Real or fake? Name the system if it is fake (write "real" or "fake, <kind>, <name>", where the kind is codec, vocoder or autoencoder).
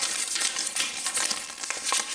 real